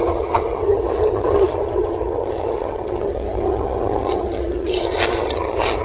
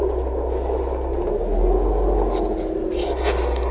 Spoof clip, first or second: first